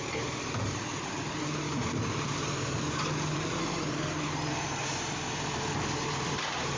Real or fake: fake